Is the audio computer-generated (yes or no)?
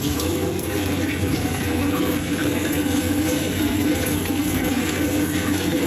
yes